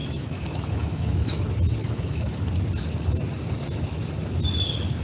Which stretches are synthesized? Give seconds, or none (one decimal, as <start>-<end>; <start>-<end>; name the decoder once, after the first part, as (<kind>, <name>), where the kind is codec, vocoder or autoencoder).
0.0-1.4 (autoencoder, DAC-VAE); 1.8-2.5